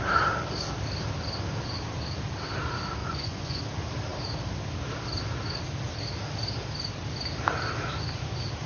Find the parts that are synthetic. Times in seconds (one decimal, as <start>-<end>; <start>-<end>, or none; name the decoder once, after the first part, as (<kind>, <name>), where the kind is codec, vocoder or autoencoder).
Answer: 3.0-3.6 (vocoder, Vocos)